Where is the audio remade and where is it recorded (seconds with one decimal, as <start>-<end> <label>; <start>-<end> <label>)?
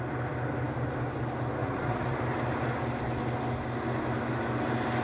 0.0-1.6 recorded; 1.6-2.2 remade; 2.2-5.0 recorded